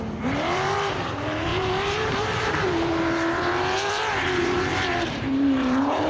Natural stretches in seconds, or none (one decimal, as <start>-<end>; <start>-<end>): none